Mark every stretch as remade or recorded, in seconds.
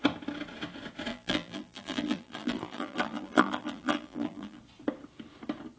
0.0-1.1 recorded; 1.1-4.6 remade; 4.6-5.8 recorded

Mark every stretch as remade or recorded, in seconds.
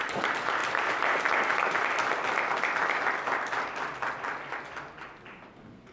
0.0-0.6 recorded; 0.6-4.1 remade; 4.1-5.9 recorded